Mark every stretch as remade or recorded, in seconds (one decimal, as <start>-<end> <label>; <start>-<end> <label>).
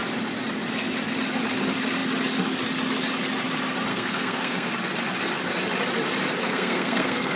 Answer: 0.0-3.9 recorded; 3.9-4.7 remade; 4.7-6.4 recorded; 6.4-7.4 remade